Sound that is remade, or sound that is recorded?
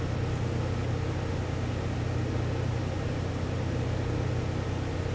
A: recorded